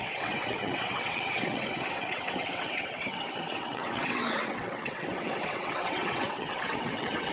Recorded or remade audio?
remade